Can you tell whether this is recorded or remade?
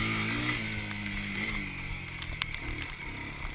recorded